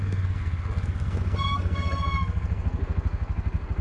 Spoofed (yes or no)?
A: yes